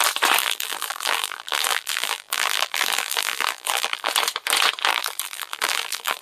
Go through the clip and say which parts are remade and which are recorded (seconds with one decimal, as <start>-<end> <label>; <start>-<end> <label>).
0.0-0.4 recorded; 0.4-4.1 remade; 4.1-4.9 recorded; 4.9-6.2 remade